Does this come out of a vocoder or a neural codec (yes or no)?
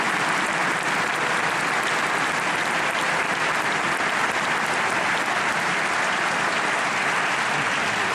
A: no